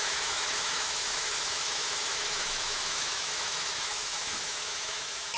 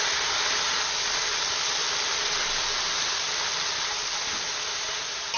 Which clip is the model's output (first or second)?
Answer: first